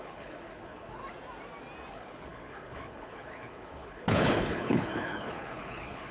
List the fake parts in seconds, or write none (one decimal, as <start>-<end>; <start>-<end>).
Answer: 0.0-1.0; 1.9-6.1